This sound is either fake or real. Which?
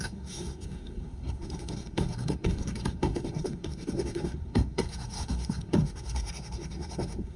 fake